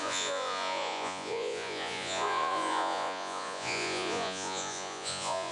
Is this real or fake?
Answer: fake